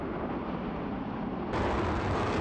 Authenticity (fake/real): real